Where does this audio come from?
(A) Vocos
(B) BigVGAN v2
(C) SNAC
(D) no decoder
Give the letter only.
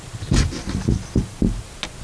D